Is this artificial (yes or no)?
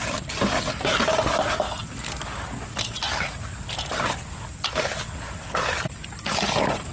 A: no